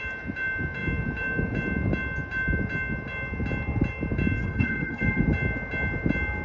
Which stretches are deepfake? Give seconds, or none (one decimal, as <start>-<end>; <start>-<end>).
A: 4.4-5.2